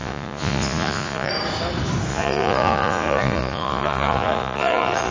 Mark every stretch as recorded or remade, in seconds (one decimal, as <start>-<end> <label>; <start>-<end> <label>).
0.0-1.3 remade; 1.3-2.1 recorded; 2.1-5.1 remade